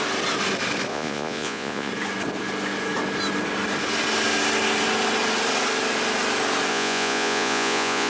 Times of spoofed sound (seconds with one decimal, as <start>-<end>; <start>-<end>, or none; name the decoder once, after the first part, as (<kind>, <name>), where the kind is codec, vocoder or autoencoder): 0.9-1.9 (vocoder, Vocos); 6.7-8.1